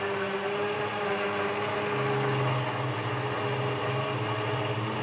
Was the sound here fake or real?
real